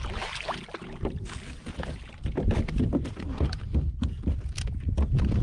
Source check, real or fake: real